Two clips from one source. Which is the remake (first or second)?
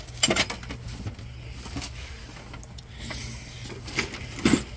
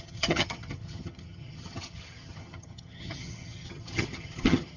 second